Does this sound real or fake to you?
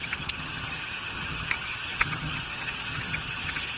fake